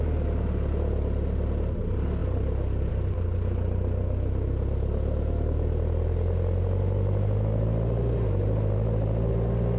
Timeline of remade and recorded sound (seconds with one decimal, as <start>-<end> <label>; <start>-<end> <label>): 0.0-9.8 recorded